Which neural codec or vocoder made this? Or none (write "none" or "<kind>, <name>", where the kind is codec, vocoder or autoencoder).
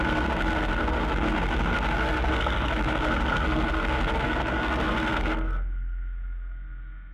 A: codec, SNAC